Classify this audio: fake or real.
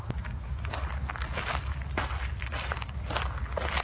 real